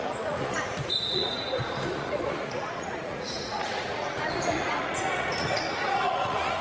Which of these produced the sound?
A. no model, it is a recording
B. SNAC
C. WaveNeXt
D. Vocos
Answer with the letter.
D